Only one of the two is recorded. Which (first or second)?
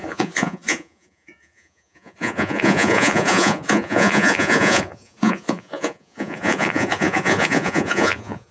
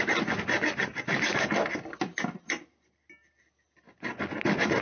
second